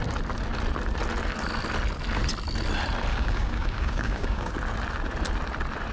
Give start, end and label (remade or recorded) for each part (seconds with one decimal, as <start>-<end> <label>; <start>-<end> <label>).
0.0-3.1 recorded; 3.1-4.5 remade; 4.5-5.9 recorded